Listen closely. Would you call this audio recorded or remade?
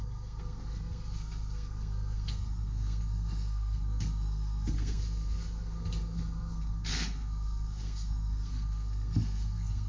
remade